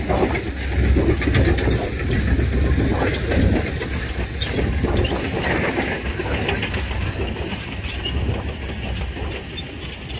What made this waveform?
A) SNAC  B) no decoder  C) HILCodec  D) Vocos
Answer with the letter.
B